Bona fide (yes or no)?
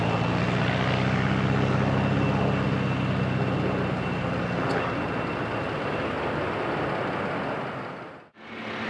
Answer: yes